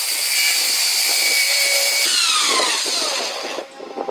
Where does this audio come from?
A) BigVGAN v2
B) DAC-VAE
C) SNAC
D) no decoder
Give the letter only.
A